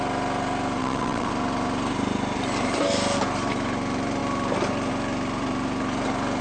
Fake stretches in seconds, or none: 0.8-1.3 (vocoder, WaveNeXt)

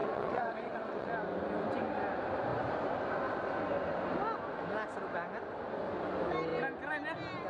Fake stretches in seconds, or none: 0.0-1.1 (vocoder, WaveNeXt)

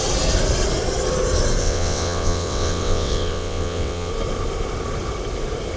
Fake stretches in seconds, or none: 1.6-4.1 (vocoder, WaveNeXt)

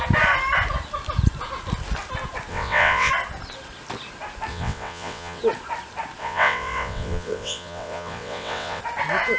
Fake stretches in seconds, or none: 2.5-3.1 (vocoder, WaveNeXt); 4.5-5.4; 6.2-8.8

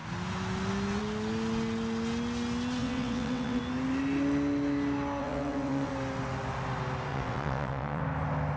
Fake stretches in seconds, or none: 2.8-3.6 (vocoder, WaveNeXt); 5.2-5.9; 7.1-8.0